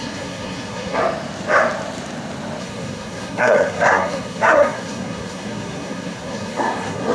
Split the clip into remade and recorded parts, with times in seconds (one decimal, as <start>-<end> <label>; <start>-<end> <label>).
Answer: 0.0-1.0 remade; 1.0-2.6 recorded; 2.6-7.1 remade